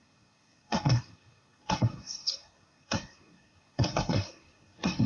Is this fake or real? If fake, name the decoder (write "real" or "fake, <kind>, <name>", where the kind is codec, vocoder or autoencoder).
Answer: fake, codec, SNAC